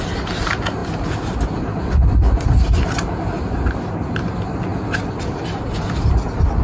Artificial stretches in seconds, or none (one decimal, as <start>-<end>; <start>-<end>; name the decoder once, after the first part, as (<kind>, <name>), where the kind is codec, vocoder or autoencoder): none